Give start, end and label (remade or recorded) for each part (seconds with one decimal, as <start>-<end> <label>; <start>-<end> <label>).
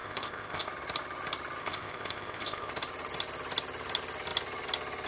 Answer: 0.0-0.7 remade; 0.7-1.6 recorded; 1.6-2.7 remade; 2.7-5.1 recorded